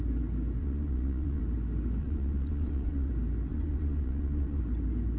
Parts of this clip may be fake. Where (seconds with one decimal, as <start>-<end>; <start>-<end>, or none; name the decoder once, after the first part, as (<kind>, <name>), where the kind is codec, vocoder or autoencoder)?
0.6-1.4 (vocoder, Vocos); 2.0-3.1; 3.5-4.6